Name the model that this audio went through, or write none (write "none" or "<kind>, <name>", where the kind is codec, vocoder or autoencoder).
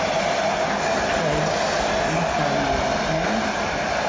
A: none